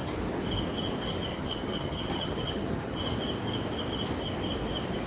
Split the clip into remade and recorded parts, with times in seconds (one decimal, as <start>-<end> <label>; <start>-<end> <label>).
0.0-1.3 recorded; 1.3-3.0 remade; 3.0-5.1 recorded